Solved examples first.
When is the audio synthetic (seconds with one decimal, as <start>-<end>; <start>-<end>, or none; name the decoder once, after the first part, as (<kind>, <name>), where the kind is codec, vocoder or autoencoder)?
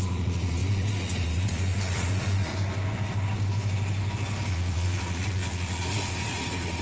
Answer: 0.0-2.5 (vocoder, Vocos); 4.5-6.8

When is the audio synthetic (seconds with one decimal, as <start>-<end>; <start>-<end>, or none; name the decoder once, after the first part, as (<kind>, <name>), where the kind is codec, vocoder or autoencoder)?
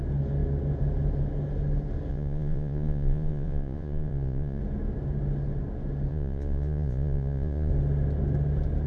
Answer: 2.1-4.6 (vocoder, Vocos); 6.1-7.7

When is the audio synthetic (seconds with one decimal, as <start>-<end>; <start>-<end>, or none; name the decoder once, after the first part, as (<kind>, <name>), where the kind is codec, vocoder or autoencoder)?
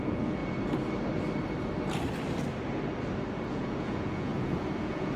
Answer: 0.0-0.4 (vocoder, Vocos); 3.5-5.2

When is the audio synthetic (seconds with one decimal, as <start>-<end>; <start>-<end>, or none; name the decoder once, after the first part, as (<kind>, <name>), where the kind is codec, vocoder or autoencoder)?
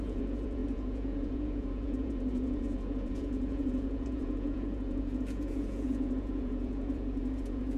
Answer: 0.0-7.8 (vocoder, Vocos)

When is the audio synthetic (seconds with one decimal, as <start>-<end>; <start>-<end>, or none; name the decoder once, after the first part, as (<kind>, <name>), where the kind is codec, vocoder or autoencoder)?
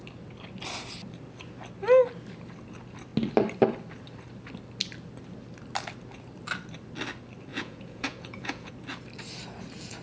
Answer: 7.5-8.7 (vocoder, Vocos)